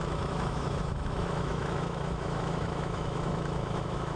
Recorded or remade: remade